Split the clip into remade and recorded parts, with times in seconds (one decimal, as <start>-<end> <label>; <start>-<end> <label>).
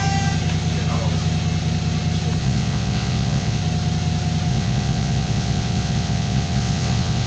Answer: 0.0-2.4 recorded; 2.4-3.6 remade; 3.6-4.5 recorded; 4.5-7.3 remade